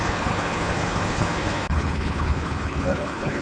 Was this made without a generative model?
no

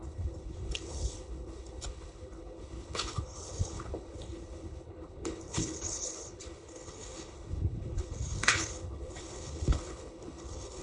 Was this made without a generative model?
no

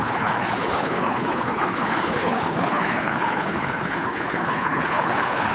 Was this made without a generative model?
no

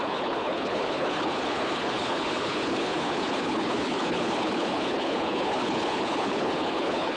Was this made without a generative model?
no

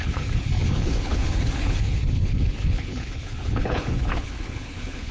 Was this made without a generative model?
no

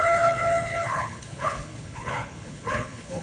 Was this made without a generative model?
no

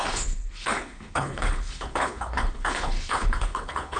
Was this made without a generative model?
no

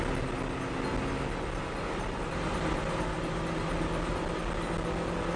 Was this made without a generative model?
yes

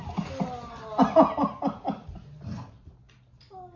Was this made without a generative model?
yes